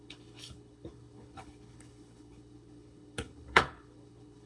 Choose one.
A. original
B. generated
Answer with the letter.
B